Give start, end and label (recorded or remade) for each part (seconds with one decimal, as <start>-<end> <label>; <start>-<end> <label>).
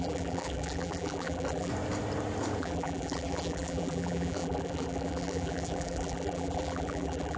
0.0-1.7 remade; 1.7-2.6 recorded; 2.6-7.4 remade